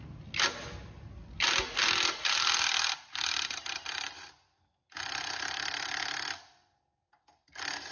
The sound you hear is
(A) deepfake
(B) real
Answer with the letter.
B